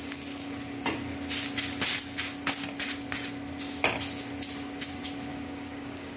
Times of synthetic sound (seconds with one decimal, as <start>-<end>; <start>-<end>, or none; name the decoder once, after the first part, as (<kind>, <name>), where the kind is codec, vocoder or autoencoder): 5.3-6.2 (codec, DAC)